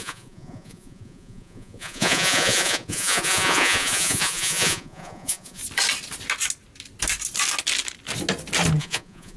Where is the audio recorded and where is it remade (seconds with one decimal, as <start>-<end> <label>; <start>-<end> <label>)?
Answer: 0.0-5.6 remade; 5.6-8.8 recorded; 8.8-9.4 remade